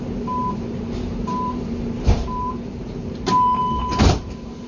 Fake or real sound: fake